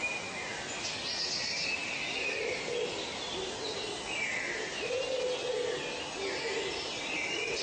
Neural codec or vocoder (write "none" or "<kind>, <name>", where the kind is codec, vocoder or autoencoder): none